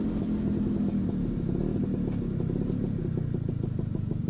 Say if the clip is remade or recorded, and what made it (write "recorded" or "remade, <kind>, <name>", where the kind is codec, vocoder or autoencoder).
recorded